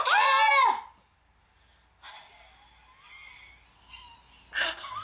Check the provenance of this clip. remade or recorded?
recorded